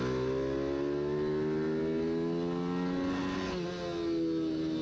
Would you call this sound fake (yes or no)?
no